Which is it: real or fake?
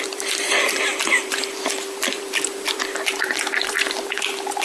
fake